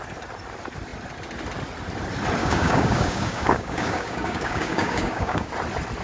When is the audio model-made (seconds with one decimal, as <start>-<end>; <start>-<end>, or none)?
2.4-5.5